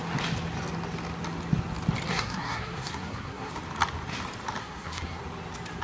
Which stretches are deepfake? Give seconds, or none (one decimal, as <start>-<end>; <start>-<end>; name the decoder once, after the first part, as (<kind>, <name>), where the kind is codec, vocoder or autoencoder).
2.1-3.5 (codec, SNAC); 4.6-5.2